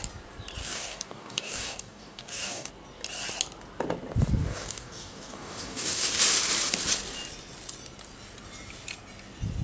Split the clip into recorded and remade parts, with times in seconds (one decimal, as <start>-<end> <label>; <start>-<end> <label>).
0.0-0.6 recorded; 0.6-2.7 remade; 2.7-4.4 recorded; 4.4-6.2 remade; 6.2-9.6 recorded